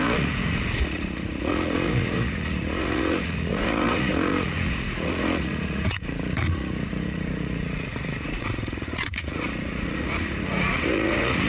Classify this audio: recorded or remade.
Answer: remade